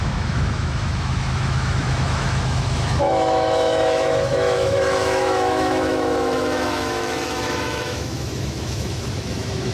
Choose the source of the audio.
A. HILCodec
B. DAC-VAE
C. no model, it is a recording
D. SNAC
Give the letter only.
B